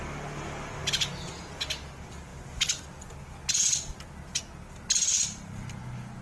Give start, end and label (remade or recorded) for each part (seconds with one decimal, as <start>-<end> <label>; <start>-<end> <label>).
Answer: 0.0-6.2 recorded